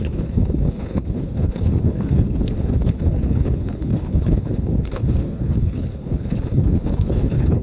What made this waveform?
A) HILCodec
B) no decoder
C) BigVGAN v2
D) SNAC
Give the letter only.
A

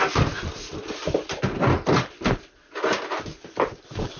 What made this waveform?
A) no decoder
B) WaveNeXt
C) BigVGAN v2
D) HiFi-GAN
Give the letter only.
A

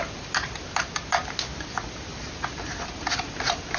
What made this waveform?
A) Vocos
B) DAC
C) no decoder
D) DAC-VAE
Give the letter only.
C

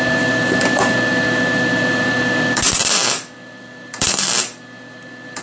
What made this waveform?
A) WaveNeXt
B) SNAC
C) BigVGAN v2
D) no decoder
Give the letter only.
C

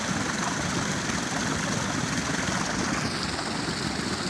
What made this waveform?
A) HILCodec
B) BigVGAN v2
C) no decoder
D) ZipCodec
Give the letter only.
C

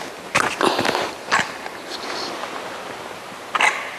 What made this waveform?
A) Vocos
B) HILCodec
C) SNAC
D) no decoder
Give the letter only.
D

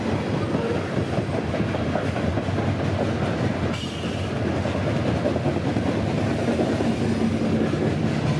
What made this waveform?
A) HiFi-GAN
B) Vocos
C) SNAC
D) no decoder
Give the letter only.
D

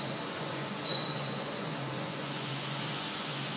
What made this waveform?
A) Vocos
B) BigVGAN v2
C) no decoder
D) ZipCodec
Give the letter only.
A